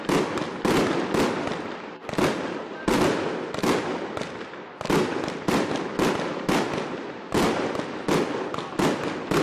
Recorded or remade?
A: recorded